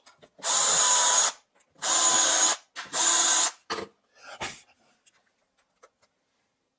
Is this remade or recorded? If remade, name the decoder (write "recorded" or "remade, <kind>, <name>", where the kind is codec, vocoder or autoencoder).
recorded